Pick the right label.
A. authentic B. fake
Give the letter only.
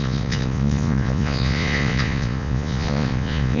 B